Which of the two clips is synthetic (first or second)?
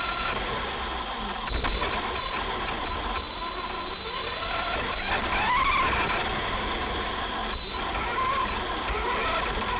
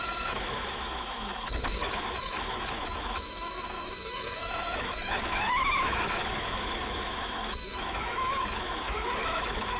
second